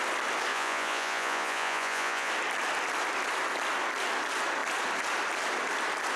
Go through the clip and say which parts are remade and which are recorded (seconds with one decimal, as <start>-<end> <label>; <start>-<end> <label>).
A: 0.0-0.5 recorded; 0.5-2.3 remade; 2.3-6.2 recorded